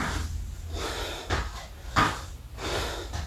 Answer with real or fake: real